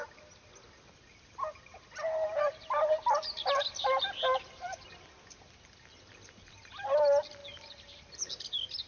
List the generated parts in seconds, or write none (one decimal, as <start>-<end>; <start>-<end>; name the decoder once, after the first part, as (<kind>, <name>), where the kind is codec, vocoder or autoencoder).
none